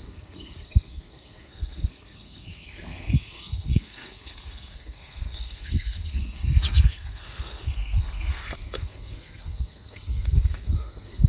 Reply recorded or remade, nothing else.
remade